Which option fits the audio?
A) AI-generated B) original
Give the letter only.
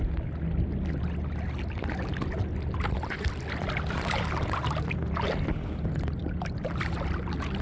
B